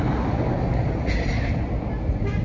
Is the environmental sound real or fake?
real